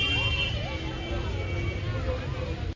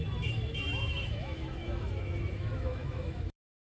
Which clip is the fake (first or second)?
second